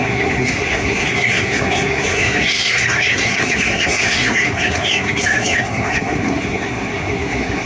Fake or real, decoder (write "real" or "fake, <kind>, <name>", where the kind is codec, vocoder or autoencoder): fake, codec, SNAC